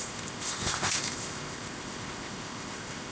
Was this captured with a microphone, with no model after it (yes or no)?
no